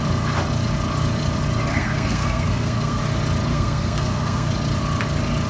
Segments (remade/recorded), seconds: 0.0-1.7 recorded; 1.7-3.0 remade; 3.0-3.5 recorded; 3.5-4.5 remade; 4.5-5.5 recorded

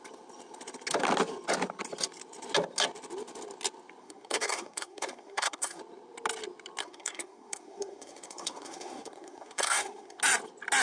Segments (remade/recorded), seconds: 0.0-4.0 recorded; 4.0-5.8 remade; 5.8-6.8 recorded; 6.8-10.2 remade; 10.2-10.8 recorded